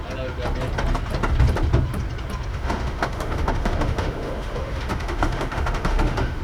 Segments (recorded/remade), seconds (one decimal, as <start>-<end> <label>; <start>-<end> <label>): 0.0-2.5 recorded; 2.5-6.4 remade